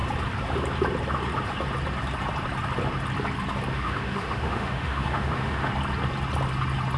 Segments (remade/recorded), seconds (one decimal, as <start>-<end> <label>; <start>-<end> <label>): 0.0-3.7 recorded; 3.7-5.7 remade; 5.7-7.0 recorded